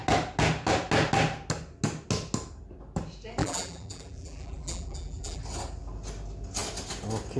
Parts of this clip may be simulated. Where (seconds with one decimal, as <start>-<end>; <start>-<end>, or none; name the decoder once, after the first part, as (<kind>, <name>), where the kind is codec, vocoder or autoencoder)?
3.4-5.4 (vocoder, BigVGAN v2)